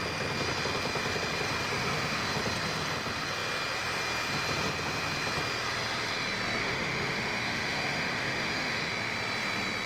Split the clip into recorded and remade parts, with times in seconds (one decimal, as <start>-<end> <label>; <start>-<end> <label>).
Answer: 0.0-1.7 recorded; 1.7-2.3 remade; 2.3-6.6 recorded; 6.6-8.9 remade; 8.9-9.9 recorded